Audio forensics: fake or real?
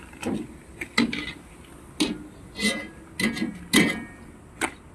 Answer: real